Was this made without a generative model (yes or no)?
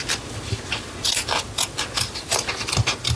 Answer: yes